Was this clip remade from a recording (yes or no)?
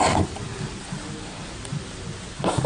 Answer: no